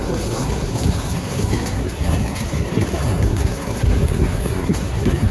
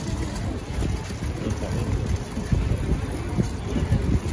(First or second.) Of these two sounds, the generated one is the first